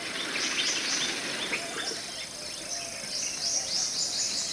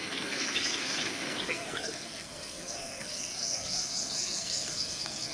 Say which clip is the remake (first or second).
second